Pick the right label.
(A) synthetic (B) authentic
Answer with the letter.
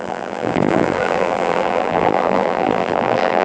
A